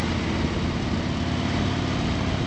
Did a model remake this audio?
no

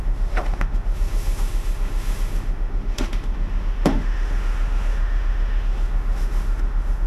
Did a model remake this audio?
yes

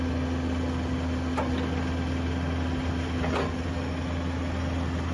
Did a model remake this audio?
no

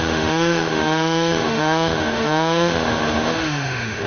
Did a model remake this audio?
yes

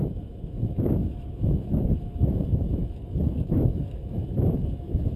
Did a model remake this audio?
yes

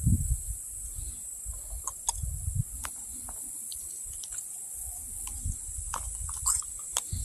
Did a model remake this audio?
no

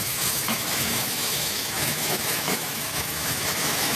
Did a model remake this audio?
yes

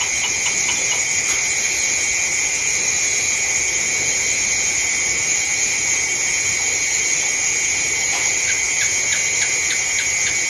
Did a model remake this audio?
no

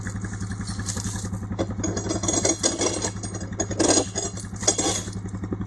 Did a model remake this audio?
no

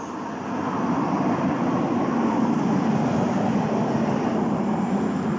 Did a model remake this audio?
no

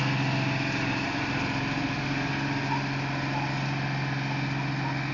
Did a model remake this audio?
no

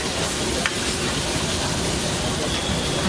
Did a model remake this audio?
no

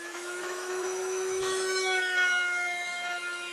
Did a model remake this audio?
yes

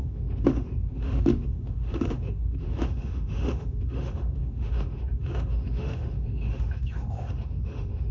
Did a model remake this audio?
yes